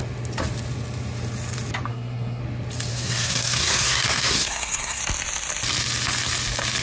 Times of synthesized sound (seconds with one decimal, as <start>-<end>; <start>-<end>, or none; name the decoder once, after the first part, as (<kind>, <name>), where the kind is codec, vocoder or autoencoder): 1.9-2.4 (codec, SNAC); 2.9-5.0